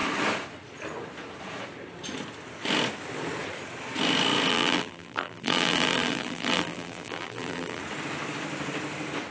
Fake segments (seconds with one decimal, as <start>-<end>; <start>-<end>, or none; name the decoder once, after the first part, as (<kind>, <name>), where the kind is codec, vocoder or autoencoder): 4.5-7.8 (vocoder, BigVGAN v2)